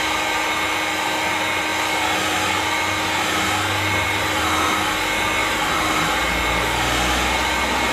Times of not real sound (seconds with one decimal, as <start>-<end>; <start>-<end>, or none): 5.4-6.0